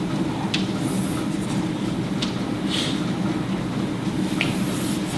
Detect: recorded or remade recorded